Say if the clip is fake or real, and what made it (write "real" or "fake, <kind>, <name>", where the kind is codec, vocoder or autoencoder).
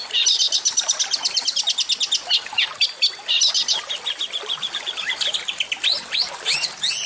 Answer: real